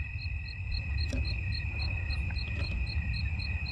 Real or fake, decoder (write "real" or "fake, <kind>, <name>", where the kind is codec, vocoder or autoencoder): real